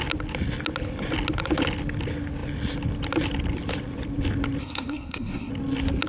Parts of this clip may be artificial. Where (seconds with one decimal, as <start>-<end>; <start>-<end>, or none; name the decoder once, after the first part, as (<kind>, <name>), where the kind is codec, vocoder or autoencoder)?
4.6-5.5 (codec, SNAC)